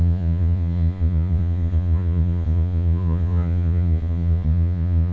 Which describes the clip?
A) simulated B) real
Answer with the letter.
A